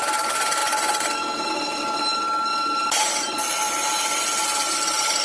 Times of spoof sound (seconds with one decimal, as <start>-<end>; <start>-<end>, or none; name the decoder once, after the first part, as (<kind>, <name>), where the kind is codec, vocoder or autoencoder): 0.6-2.0 (vocoder, BigVGAN v2); 2.5-5.2